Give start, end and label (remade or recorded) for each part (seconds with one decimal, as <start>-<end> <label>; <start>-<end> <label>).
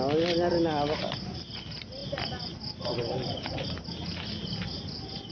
0.0-5.3 recorded